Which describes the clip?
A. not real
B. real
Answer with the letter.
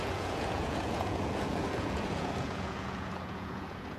A